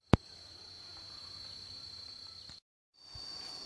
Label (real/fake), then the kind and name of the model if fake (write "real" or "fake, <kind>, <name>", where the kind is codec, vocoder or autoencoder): real